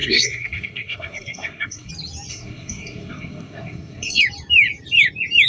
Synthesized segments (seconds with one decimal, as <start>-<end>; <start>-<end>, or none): 0.0-1.9; 2.3-4.2